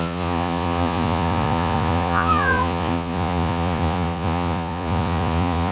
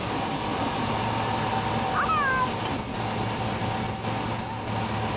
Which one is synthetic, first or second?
first